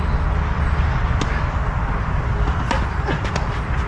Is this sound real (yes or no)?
yes